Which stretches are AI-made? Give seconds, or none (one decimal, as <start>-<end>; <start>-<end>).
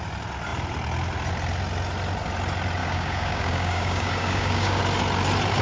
2.8-4.8